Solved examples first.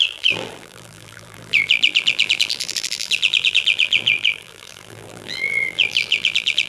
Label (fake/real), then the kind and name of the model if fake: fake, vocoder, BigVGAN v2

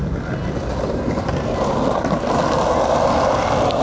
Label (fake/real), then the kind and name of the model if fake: real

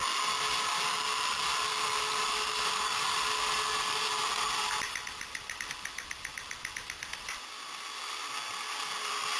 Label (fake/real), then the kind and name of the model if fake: real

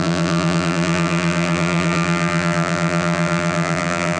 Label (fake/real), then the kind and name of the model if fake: fake, vocoder, BigVGAN v2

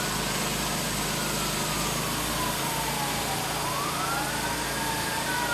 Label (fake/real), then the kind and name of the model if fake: real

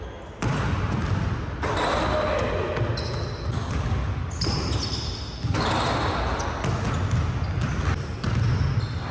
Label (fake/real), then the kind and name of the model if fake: real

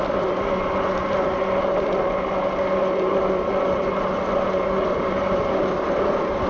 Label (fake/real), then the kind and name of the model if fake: real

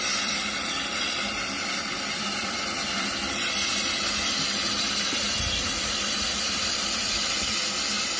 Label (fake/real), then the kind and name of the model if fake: fake, vocoder, BigVGAN v2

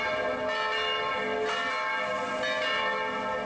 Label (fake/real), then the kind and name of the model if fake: real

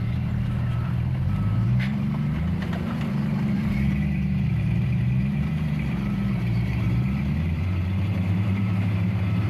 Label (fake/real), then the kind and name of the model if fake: fake, vocoder, BigVGAN v2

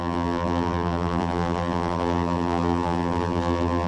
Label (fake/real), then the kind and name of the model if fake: fake, vocoder, BigVGAN v2